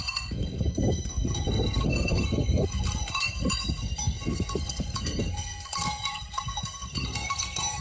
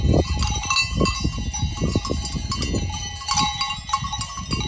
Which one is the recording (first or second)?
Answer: second